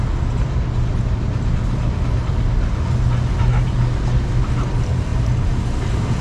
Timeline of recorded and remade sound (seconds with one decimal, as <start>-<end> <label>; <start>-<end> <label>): 0.0-6.2 recorded